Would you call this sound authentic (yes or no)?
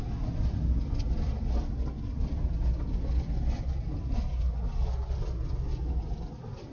yes